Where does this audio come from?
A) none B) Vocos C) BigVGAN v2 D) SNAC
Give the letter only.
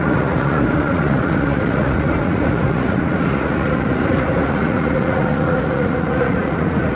B